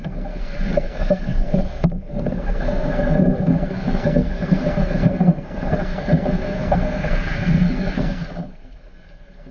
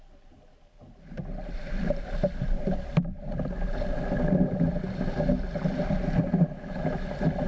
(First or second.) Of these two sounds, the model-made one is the first